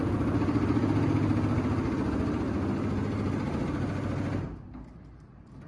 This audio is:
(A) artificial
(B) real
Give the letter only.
B